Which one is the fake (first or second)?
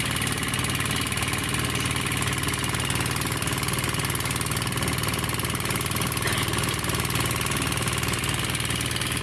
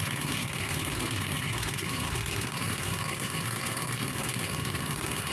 second